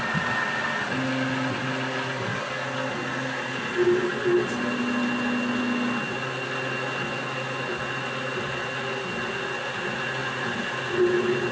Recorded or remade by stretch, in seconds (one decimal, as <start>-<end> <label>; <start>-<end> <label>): 0.0-11.5 recorded